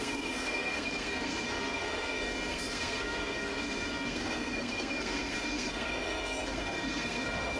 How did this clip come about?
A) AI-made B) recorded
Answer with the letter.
A